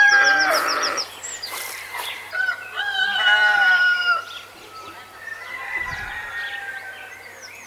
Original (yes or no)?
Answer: no